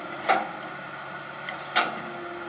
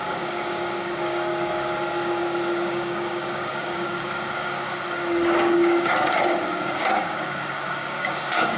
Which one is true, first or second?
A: first